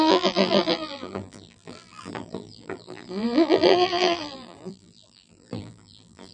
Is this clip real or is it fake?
fake